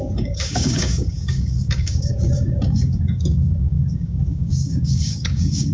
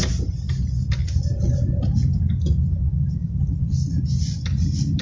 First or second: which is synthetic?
first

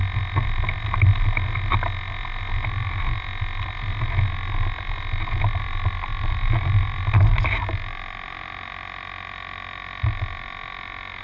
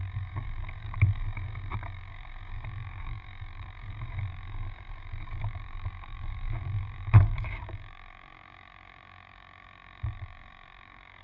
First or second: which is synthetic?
second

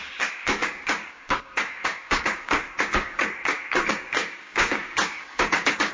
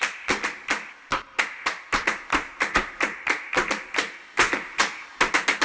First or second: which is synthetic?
first